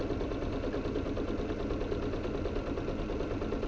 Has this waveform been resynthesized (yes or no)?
no